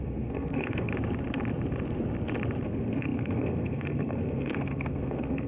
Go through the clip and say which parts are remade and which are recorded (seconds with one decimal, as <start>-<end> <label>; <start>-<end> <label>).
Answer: 0.0-0.9 remade; 0.9-2.6 recorded; 2.6-5.5 remade